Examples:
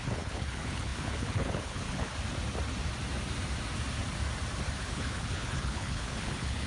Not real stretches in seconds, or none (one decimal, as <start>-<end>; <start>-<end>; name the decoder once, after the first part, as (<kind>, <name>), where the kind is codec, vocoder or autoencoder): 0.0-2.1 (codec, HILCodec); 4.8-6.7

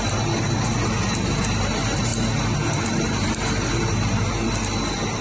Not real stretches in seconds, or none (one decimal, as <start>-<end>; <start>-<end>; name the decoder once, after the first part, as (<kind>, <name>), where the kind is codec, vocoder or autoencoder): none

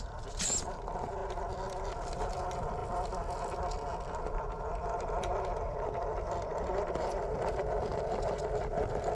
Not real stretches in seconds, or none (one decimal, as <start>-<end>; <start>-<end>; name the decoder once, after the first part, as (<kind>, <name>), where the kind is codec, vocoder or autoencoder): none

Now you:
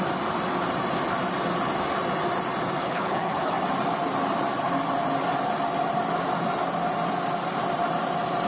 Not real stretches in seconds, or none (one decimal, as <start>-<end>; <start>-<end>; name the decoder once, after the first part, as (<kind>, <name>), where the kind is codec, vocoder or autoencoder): 2.8-3.5 (codec, HILCodec)

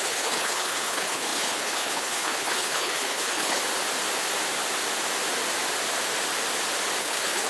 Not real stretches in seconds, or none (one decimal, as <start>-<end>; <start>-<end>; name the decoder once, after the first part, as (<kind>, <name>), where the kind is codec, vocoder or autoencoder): 0.0-3.6 (codec, HILCodec); 7.0-7.5

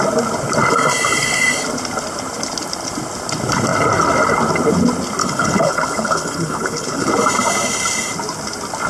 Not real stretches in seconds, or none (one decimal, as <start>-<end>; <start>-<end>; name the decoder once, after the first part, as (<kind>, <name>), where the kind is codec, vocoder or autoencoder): 5.2-7.1 (codec, HILCodec)